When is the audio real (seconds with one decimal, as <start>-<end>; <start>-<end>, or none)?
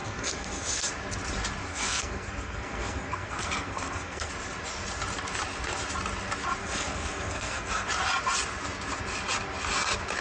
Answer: 0.9-1.7; 4.3-6.6; 7.9-10.2